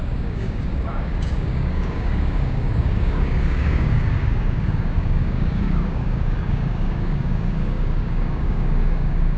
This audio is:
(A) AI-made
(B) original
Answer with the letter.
A